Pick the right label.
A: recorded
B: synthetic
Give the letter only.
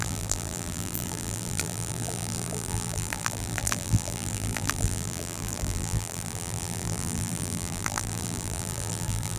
B